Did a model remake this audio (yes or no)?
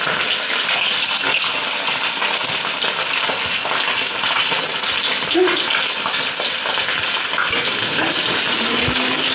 no